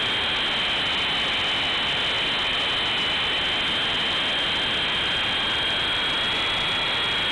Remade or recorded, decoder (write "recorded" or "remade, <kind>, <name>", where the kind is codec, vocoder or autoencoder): recorded